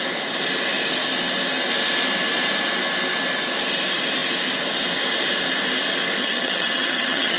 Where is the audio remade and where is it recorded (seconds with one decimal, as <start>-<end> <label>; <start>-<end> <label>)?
0.0-6.2 recorded; 6.2-7.4 remade